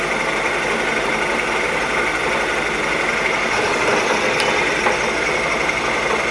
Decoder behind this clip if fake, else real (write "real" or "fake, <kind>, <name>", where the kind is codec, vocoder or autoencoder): real